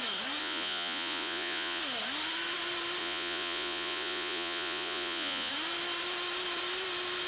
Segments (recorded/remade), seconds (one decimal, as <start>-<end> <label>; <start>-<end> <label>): 0.0-0.4 recorded; 0.4-1.8 remade; 1.8-3.0 recorded; 3.0-5.5 remade; 5.5-7.3 recorded